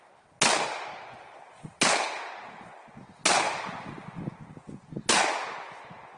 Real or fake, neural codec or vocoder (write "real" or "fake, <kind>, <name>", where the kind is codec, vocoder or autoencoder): real